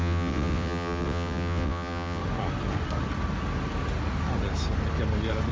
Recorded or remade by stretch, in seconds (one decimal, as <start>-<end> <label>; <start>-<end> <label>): 0.0-2.2 remade; 2.2-5.5 recorded